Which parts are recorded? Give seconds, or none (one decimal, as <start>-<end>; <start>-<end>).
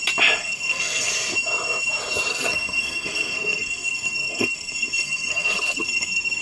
0.0-0.4; 1.1-2.3